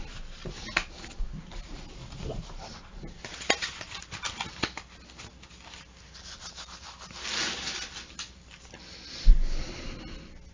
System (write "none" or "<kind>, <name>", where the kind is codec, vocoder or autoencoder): none